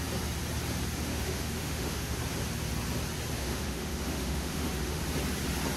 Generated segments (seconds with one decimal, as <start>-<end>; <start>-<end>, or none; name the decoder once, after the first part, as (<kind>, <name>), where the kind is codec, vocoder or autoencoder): 1.1-2.2 (autoencoder, DAC-VAE); 3.4-5.0